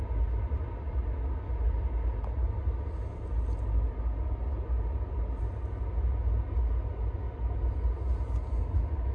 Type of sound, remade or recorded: recorded